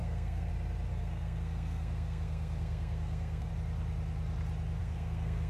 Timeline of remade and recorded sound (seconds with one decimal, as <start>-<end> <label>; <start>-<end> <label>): 0.0-0.5 remade; 0.5-0.9 recorded; 0.9-3.5 remade; 3.5-4.8 recorded; 4.8-5.5 remade